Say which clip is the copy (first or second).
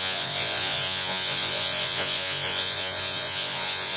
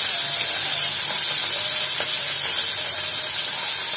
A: first